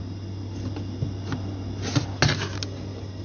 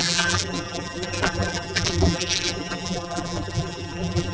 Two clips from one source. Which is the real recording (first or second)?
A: first